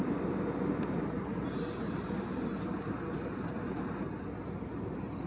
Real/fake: real